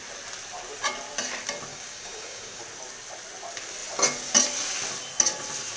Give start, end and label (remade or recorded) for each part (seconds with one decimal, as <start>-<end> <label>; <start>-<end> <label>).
0.0-1.7 recorded; 1.7-2.6 remade; 2.6-5.8 recorded